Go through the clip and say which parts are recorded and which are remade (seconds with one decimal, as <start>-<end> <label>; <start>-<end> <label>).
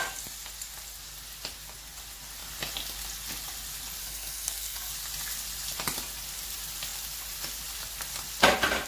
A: 0.0-4.0 recorded; 4.0-4.9 remade; 4.9-8.9 recorded